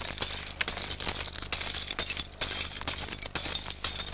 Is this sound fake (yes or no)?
no